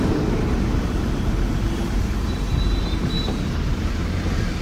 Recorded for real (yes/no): no